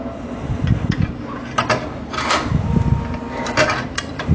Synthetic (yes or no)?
no